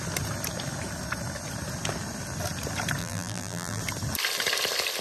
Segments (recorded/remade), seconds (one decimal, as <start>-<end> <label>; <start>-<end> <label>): 0.0-3.0 recorded; 3.0-3.8 remade; 3.8-5.0 recorded